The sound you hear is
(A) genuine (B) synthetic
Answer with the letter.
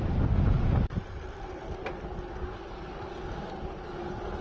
B